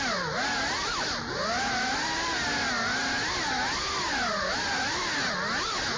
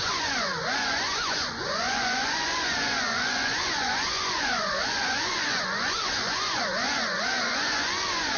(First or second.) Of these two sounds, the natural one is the first